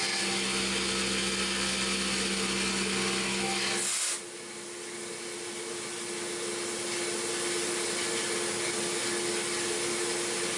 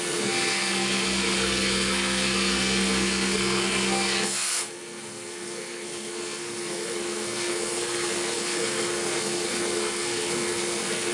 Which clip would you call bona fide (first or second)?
first